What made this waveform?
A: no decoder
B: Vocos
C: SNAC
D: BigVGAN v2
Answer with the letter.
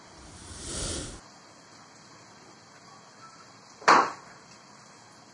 A